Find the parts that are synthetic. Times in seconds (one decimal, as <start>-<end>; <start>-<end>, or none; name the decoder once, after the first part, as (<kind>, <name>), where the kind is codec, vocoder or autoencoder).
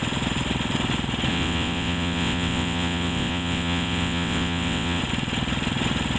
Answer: 1.3-5.0 (vocoder, WaveNeXt)